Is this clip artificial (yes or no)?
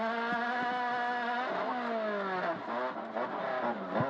no